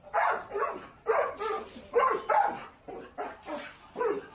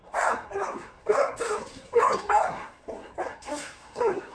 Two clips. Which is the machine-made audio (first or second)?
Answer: second